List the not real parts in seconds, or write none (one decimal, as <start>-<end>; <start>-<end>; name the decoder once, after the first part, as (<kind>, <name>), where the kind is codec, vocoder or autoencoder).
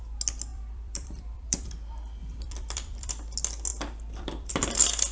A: 0.5-1.7 (vocoder, BigVGAN v2); 2.2-3.1; 3.7-4.5